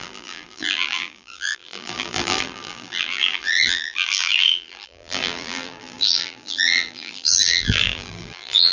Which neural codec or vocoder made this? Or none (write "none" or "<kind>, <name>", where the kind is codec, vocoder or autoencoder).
vocoder, BigVGAN v2